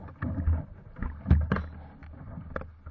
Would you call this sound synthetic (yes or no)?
no